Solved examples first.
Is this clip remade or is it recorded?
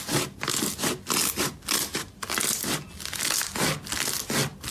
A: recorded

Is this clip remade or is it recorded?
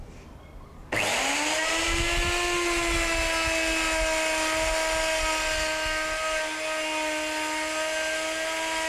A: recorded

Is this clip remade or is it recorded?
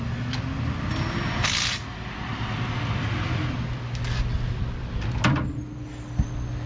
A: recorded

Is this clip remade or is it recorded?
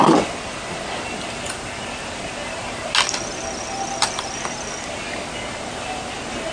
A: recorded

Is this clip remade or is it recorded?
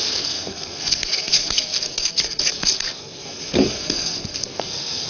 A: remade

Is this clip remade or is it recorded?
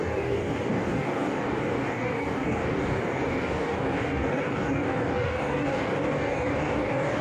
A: remade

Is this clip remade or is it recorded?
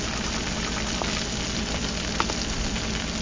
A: recorded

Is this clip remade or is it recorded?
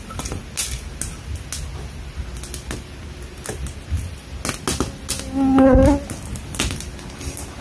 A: recorded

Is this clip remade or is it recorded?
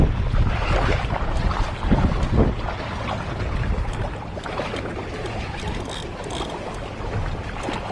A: recorded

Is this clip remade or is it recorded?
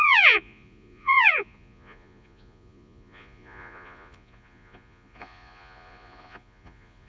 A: remade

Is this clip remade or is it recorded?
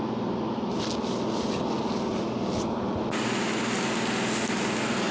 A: recorded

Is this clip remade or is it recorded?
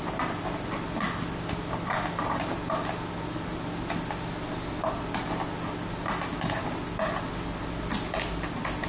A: recorded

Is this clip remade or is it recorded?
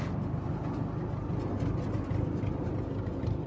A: recorded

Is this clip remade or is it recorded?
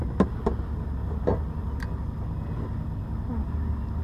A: recorded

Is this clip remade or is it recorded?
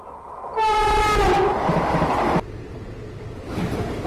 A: recorded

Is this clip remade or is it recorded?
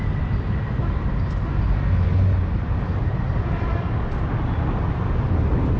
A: recorded